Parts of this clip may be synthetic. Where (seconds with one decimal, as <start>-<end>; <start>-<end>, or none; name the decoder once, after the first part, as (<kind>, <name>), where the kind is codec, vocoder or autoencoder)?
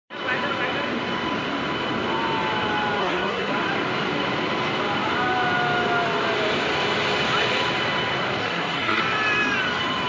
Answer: 3.0-3.5 (codec, SNAC); 8.4-9.0